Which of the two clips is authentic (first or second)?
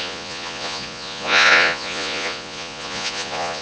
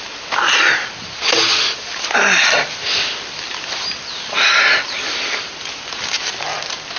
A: second